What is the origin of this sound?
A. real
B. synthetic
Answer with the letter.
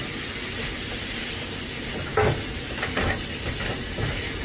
A